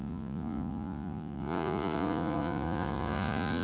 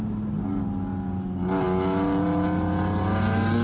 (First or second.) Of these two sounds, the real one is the second